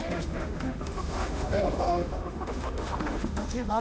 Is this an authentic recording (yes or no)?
no